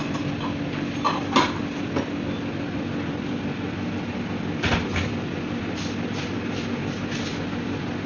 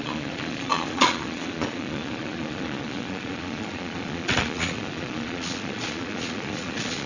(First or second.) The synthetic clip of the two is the second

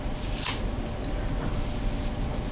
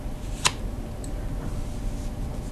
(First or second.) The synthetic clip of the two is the first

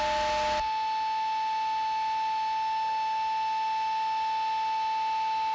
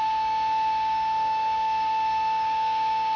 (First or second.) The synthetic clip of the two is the second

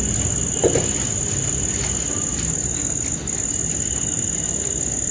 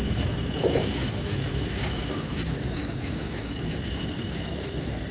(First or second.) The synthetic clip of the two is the second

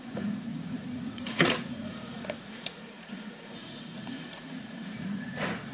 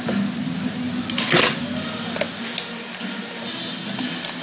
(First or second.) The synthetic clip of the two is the first